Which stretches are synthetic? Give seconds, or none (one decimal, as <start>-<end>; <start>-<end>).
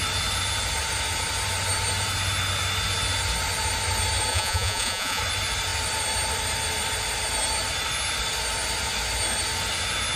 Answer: 4.3-5.2